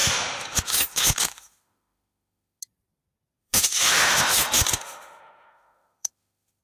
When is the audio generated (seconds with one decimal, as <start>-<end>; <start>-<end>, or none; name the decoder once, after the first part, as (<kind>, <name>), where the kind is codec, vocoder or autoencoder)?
0.0-2.6 (autoencoder, DAC-VAE); 3.4-6.6